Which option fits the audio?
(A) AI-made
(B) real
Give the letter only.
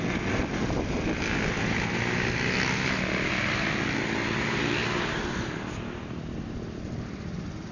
B